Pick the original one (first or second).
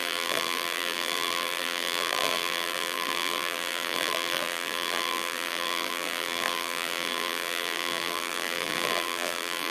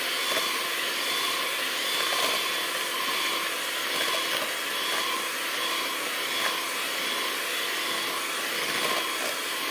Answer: second